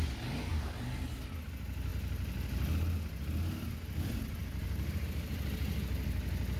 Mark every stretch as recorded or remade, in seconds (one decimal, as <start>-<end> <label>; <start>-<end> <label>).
0.0-4.4 recorded; 4.4-5.7 remade; 5.7-6.6 recorded